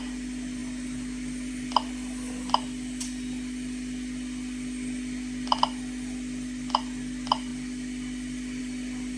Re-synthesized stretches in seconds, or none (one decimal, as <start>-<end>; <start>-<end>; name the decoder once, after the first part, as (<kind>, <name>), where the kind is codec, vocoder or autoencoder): none